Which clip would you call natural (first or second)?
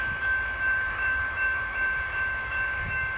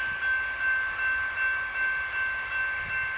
second